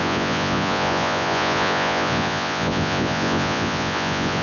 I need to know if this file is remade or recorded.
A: remade